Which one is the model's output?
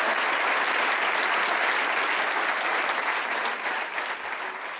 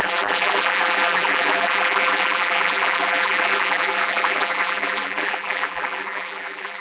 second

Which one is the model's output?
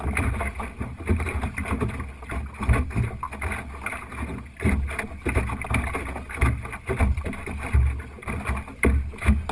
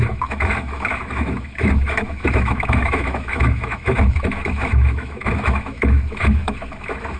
second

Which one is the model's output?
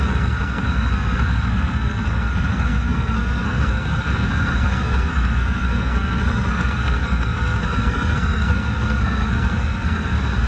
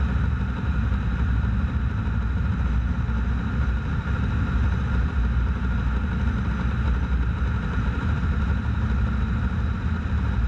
first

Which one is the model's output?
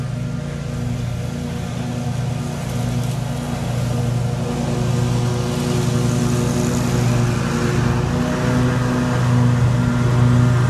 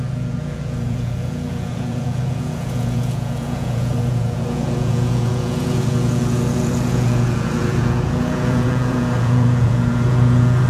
second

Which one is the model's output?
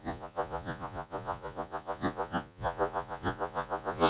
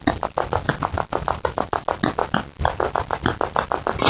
first